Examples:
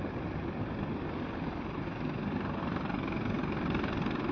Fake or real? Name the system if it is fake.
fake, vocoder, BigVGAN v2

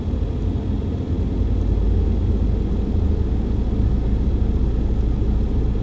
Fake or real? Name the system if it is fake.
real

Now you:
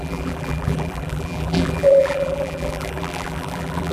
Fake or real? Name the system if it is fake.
fake, vocoder, BigVGAN v2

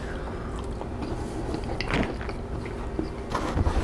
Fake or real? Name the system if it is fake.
real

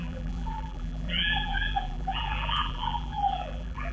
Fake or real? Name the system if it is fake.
fake, vocoder, BigVGAN v2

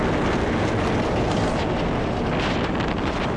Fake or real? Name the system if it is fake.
real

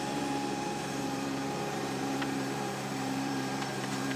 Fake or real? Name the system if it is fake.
fake, vocoder, BigVGAN v2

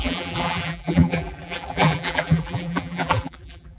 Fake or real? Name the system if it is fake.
fake, vocoder, BigVGAN v2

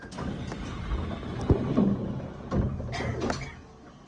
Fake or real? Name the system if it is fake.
real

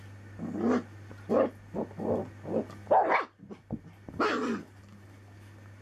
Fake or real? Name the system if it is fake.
real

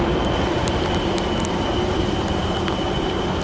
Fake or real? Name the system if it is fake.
fake, vocoder, BigVGAN v2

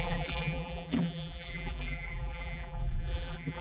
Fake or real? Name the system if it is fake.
fake, vocoder, BigVGAN v2